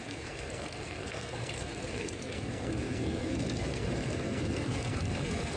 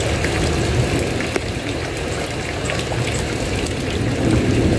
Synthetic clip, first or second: first